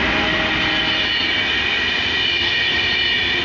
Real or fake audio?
real